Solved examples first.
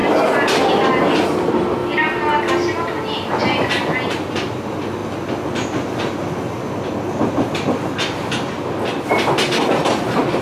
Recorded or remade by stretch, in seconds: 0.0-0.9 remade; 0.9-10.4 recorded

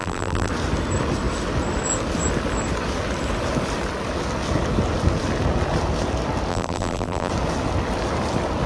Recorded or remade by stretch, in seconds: 0.0-0.5 remade; 0.5-6.5 recorded; 6.5-7.3 remade; 7.3-8.7 recorded